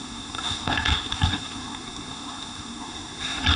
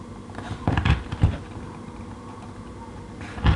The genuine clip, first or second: second